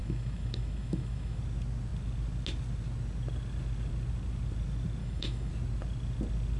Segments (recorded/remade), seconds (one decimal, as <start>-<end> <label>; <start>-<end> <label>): 0.0-1.4 remade; 1.4-5.0 recorded; 5.0-5.5 remade; 5.5-6.6 recorded